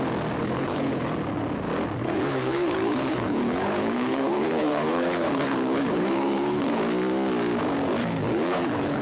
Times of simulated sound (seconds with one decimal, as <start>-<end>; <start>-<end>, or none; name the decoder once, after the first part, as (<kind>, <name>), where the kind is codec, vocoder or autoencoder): 0.4-1.1 (codec, HILCodec); 2.0-6.8; 8.0-9.0

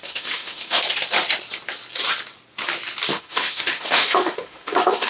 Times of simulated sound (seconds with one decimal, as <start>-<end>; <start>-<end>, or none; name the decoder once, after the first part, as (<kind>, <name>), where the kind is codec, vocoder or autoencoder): 0.0-0.8 (autoencoder, DAC-VAE); 3.1-5.1